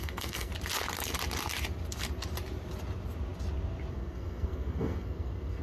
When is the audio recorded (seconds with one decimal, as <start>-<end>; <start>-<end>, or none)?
0.5-3.9